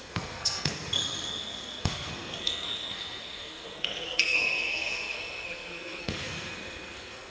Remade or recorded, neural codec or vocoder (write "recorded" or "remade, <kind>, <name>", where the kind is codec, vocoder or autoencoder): remade, codec, SNAC